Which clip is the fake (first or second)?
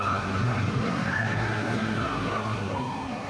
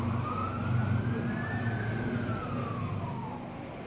first